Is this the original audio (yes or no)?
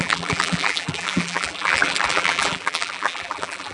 no